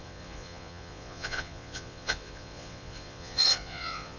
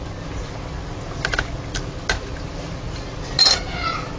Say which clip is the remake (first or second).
first